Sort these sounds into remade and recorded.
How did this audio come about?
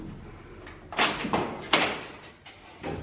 recorded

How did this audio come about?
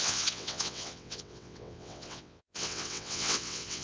remade